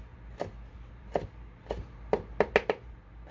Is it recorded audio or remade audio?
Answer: recorded